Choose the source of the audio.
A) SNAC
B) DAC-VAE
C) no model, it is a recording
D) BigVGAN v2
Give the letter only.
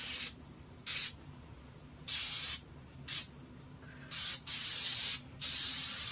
D